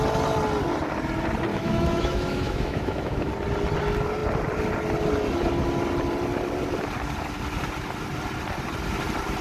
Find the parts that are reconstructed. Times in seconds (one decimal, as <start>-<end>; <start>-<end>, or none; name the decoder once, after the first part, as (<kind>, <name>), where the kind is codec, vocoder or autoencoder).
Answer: 1.5-3.3 (autoencoder, DAC-VAE)